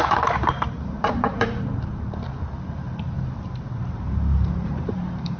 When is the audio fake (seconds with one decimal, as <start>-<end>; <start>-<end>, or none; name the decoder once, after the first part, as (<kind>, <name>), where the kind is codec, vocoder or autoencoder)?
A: 0.0-1.9 (vocoder, BigVGAN v2); 3.0-5.4